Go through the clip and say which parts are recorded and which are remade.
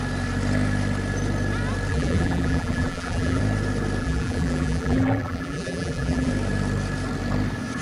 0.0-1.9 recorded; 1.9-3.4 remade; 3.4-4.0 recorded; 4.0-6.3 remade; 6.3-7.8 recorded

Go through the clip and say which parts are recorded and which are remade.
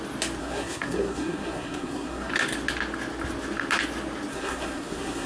0.0-0.4 recorded; 0.4-2.3 remade; 2.3-4.3 recorded; 4.3-5.3 remade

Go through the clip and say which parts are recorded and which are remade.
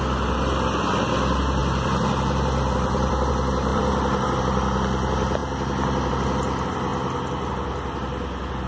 0.0-1.6 recorded; 1.6-3.3 remade; 3.3-3.7 recorded; 3.7-4.4 remade; 4.4-8.7 recorded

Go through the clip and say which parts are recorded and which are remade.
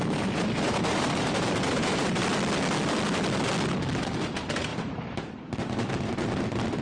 0.0-2.2 remade; 2.2-4.2 recorded; 4.2-6.8 remade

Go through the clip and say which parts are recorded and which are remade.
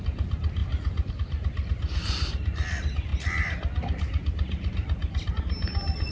0.0-6.1 recorded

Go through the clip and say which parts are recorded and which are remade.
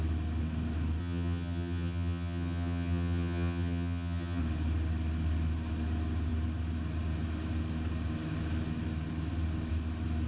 0.0-1.0 recorded; 1.0-4.4 remade; 4.4-10.3 recorded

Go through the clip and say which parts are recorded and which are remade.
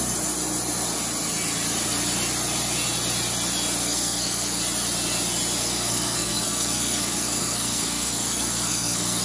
0.0-3.8 recorded; 3.8-4.6 remade; 4.6-5.6 recorded; 5.6-9.2 remade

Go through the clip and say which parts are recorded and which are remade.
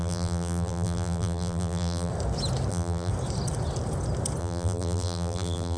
0.0-2.1 remade; 2.1-2.7 recorded; 2.7-3.1 remade; 3.1-4.4 recorded; 4.4-5.8 remade